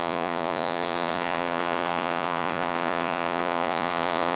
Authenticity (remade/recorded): remade